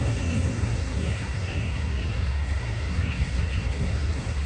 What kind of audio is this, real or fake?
fake